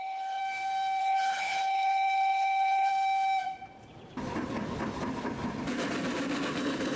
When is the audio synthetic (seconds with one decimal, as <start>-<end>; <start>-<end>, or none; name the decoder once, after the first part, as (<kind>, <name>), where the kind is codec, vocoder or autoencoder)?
0.0-0.4 (codec, HILCodec); 1.0-2.9; 6.6-7.0